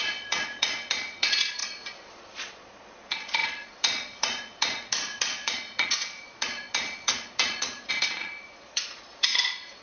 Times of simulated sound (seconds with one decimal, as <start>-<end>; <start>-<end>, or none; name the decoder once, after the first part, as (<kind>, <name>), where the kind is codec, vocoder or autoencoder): 0.0-9.8 (vocoder, Vocos)